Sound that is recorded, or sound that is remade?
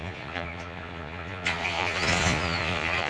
remade